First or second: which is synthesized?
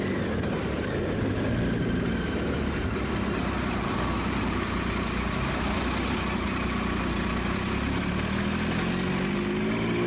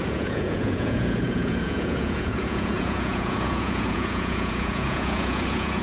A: second